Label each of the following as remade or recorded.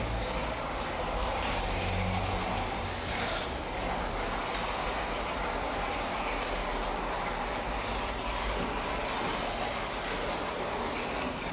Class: recorded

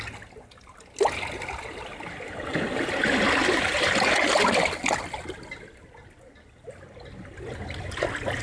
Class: recorded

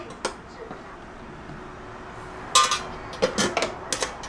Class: recorded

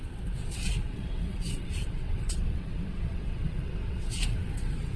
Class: remade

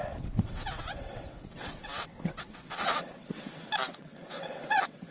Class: remade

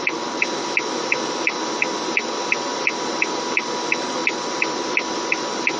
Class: recorded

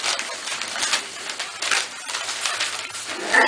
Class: recorded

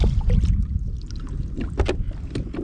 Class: recorded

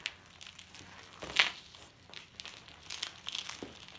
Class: recorded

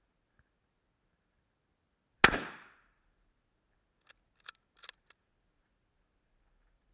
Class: recorded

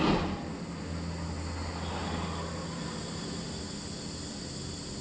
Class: recorded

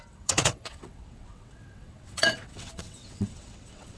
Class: remade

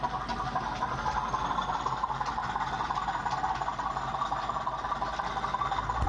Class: recorded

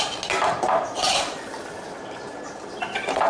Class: recorded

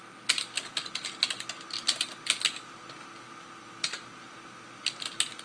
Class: recorded